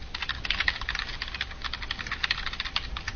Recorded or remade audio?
recorded